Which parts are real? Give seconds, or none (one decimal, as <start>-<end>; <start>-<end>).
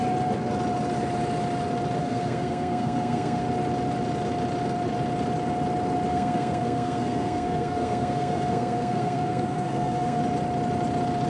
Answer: 0.0-2.0; 3.4-6.1; 10.2-11.3